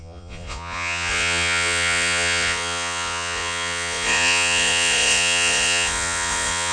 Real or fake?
fake